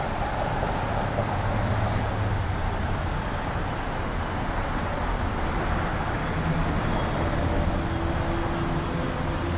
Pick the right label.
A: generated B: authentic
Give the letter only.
B